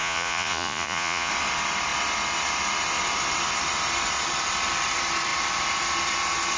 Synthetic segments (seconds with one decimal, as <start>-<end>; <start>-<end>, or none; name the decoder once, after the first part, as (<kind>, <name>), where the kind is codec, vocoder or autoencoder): 0.0-1.3 (vocoder, Vocos)